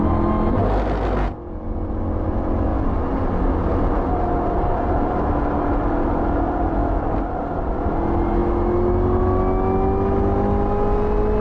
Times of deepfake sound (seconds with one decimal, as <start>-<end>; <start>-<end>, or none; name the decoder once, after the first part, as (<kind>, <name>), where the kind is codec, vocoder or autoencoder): none